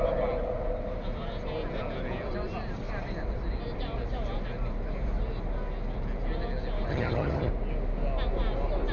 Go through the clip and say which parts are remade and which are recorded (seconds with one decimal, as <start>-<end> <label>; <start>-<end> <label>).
0.0-6.9 recorded; 6.9-7.5 remade; 7.5-8.9 recorded

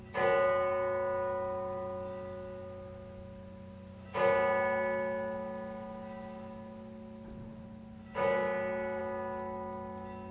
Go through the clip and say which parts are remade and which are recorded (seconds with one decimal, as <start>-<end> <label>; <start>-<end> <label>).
0.0-10.3 recorded

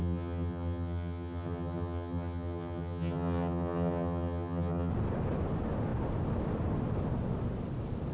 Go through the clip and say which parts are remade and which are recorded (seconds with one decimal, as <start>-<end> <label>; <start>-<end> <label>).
0.0-4.9 remade; 4.9-8.1 recorded

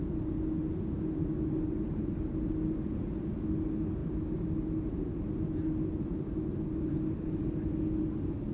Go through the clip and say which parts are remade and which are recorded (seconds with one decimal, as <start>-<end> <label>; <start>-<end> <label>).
0.0-8.5 recorded

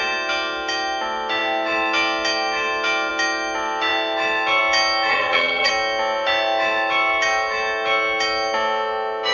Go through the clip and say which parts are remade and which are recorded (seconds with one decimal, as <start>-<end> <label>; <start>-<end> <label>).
0.0-5.1 recorded; 5.1-5.7 remade; 5.7-9.3 recorded